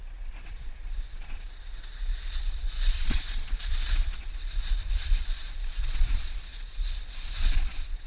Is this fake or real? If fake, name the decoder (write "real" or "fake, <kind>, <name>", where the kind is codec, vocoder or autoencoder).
fake, vocoder, Vocos